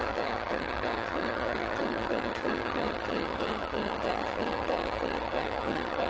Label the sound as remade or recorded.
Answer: remade